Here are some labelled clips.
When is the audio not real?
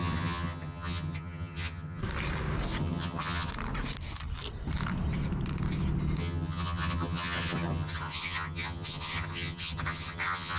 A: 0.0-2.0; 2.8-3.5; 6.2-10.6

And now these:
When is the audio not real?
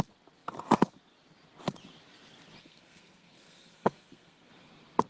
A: 2.6-4.5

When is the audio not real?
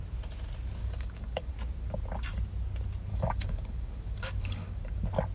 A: 0.8-1.5; 3.1-4.8